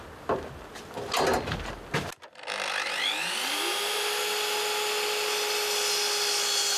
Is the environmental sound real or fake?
real